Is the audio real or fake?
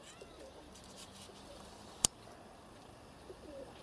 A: real